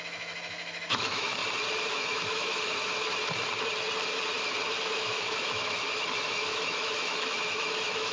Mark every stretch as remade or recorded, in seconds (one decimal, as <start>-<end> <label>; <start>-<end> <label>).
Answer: 0.0-1.4 remade; 1.4-1.9 recorded; 1.9-3.1 remade; 3.1-4.8 recorded; 4.8-8.1 remade